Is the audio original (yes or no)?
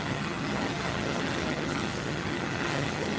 no